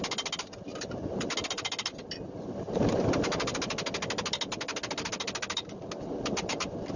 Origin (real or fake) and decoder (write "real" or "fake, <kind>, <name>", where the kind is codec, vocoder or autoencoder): real